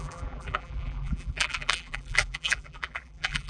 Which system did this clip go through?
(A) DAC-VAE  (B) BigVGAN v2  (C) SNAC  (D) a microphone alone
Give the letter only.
B